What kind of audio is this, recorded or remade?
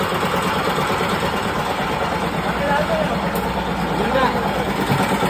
recorded